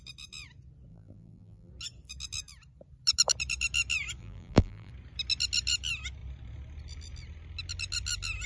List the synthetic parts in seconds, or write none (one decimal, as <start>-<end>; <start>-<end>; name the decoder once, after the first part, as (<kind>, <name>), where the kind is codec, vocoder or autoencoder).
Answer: 0.9-1.7 (vocoder, BigVGAN v2); 4.2-4.9